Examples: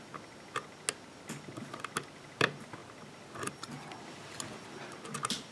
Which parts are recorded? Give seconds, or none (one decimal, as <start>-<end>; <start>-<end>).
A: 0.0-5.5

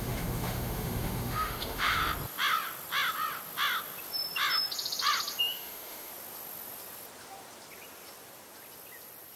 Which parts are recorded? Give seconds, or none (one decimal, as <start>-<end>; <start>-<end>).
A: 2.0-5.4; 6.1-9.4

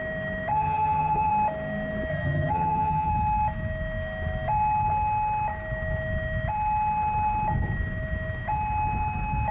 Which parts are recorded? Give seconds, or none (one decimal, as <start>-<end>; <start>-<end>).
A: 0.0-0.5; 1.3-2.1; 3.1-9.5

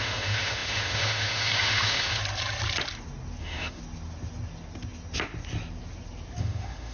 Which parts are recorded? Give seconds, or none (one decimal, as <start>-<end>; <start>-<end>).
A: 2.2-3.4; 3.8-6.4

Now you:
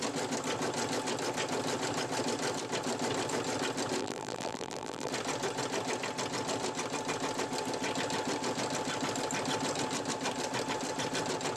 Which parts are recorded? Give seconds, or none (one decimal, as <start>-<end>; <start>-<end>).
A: 0.0-4.0; 5.1-11.6